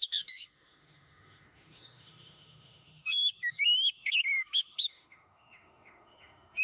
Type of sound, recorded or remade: remade